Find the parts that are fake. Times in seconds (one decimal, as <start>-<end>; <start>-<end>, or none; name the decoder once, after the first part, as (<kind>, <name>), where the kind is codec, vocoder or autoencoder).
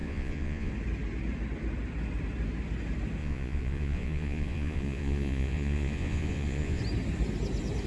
0.0-0.7 (vocoder, Vocos); 3.2-6.8